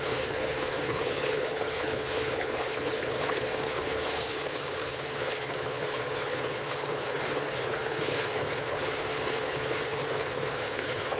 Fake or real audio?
fake